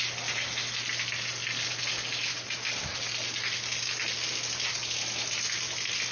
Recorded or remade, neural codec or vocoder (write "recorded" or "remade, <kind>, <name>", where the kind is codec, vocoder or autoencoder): recorded